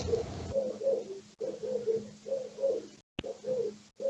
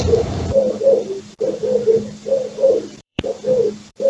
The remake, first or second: second